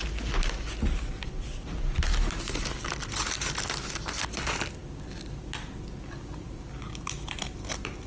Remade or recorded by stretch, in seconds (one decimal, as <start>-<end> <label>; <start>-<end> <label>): 0.0-8.1 recorded